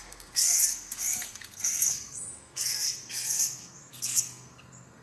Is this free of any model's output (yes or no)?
no